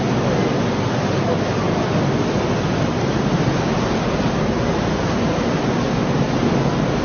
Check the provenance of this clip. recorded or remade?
recorded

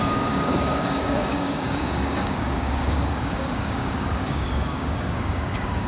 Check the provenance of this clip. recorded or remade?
remade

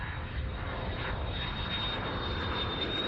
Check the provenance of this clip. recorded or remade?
recorded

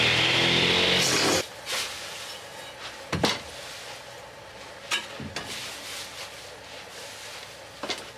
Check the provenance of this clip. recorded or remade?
recorded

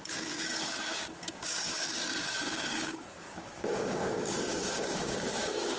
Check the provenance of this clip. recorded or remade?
remade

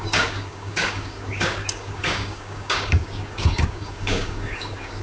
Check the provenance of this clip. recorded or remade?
remade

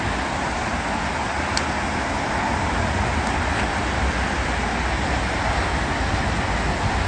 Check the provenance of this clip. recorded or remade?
recorded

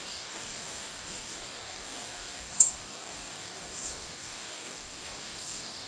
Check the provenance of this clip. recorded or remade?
remade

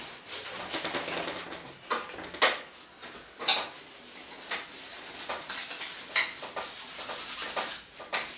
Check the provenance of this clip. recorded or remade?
recorded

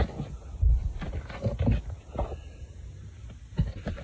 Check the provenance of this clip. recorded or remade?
recorded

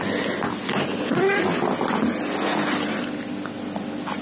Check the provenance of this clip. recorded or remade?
recorded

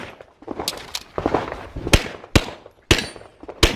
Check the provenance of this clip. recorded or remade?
recorded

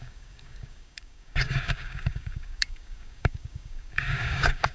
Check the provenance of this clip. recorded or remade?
remade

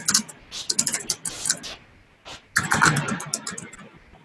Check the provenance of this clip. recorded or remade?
recorded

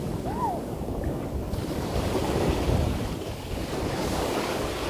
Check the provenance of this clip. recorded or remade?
remade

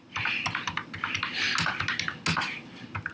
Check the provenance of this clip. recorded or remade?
recorded